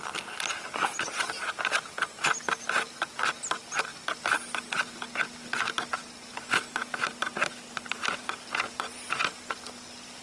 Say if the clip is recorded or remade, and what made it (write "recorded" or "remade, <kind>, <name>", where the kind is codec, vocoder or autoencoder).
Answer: recorded